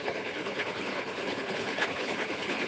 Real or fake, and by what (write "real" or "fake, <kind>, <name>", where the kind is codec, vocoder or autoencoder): fake, codec, HILCodec